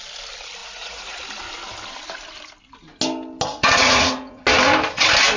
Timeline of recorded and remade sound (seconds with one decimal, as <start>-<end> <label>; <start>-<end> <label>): 0.0-0.6 recorded; 0.6-1.2 remade; 1.2-3.5 recorded; 3.5-4.4 remade; 4.4-5.4 recorded